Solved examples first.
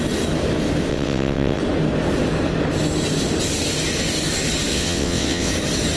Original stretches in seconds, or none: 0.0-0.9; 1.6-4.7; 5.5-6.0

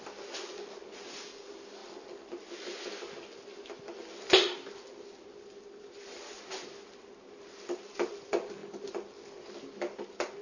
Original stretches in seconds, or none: 0.0-10.4

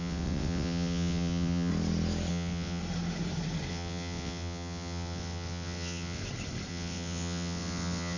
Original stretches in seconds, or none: 1.7-2.3; 2.8-3.7; 6.2-6.7

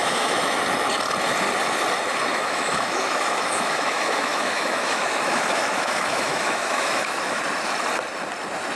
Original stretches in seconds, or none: 0.6-2.3; 7.4-8.8

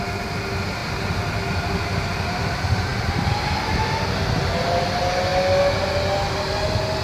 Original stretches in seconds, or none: 0.0-7.0